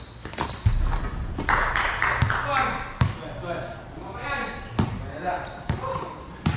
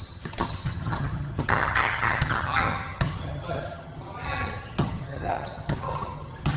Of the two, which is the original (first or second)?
first